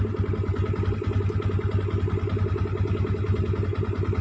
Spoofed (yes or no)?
no